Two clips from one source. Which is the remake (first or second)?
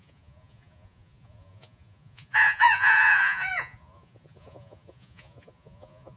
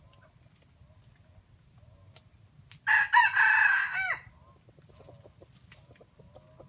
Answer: first